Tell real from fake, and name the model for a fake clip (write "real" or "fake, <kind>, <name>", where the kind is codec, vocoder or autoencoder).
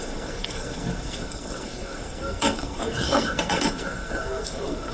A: fake, codec, SNAC